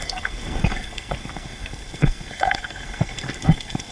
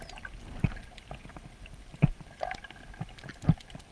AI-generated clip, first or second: first